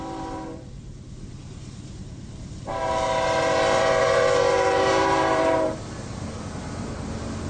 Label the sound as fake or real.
fake